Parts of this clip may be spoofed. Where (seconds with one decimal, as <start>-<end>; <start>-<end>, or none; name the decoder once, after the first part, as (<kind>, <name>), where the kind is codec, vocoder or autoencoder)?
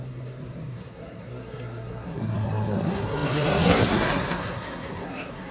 0.0-5.5 (codec, SNAC)